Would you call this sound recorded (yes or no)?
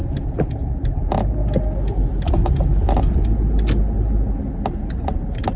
yes